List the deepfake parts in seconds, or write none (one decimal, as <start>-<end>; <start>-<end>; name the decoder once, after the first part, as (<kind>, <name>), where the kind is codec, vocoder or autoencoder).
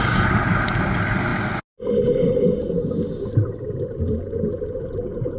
none